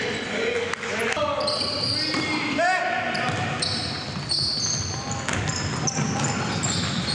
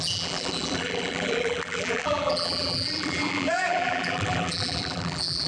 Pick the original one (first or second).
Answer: first